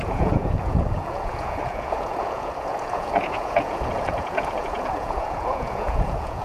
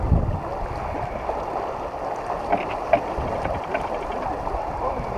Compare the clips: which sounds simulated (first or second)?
first